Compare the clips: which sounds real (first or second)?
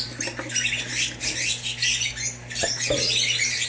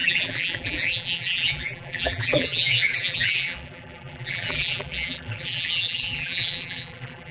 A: first